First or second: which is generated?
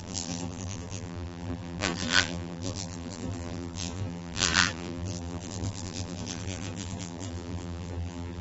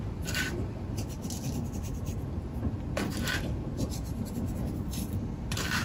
first